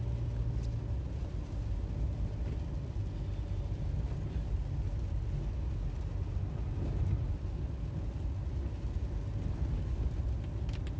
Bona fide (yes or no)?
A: yes